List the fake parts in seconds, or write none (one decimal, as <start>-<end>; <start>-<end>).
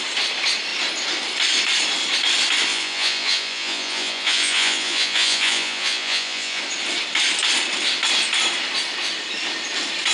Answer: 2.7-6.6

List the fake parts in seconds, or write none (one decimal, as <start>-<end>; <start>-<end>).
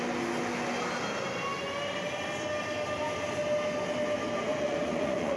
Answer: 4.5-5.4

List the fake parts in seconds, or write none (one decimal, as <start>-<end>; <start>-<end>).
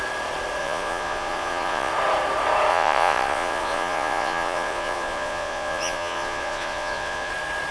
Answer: 0.6-1.9; 2.7-7.3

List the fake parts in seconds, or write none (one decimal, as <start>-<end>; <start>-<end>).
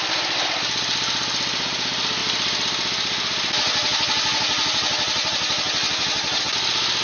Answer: none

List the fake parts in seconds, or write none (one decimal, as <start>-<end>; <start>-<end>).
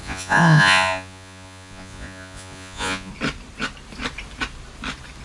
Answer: 0.0-3.1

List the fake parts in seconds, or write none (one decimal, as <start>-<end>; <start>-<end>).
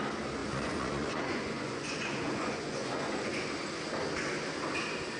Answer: 0.4-3.5